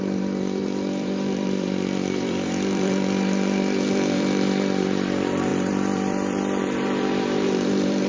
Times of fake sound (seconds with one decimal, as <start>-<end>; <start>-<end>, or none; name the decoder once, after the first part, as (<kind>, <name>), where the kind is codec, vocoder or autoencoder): 0.0-8.1 (vocoder, BigVGAN v2)